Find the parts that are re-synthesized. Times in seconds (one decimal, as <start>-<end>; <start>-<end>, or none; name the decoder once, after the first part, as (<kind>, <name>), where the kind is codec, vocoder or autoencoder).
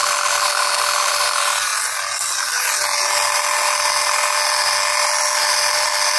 0.0-1.7 (vocoder, BigVGAN v2); 5.4-6.2